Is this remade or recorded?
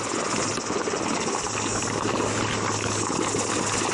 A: recorded